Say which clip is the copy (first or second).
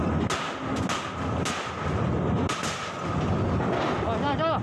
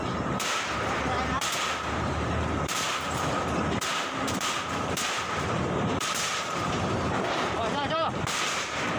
second